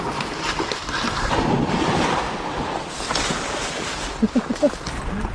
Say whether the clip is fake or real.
real